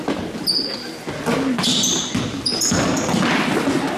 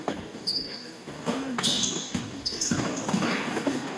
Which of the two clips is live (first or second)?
first